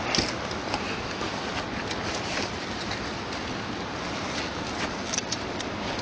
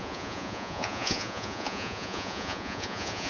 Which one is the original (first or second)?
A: first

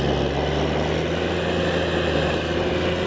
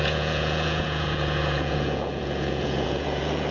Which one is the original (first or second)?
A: first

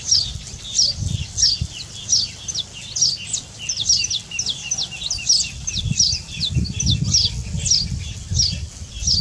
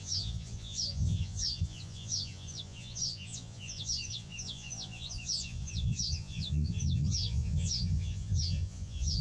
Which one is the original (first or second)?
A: first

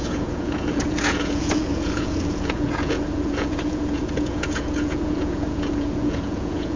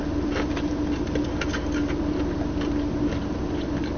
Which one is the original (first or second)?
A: second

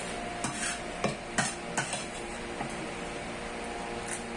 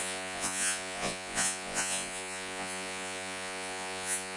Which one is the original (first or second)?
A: first